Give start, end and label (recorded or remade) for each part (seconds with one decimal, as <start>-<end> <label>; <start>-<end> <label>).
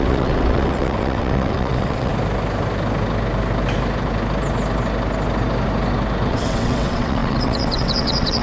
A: 0.0-2.1 remade; 2.1-6.3 recorded; 6.3-8.4 remade